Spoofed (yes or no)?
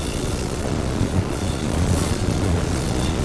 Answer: yes